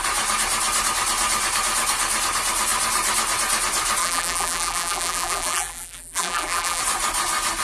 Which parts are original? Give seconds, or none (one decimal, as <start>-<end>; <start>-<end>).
0.0-4.0; 6.8-7.6